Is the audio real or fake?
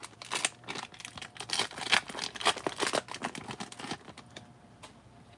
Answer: real